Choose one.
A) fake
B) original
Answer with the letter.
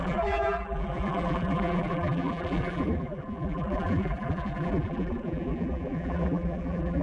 A